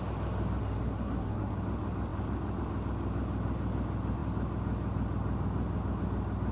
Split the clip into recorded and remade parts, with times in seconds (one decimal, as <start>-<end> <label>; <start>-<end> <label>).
0.0-0.6 recorded; 0.6-1.5 remade; 1.5-6.5 recorded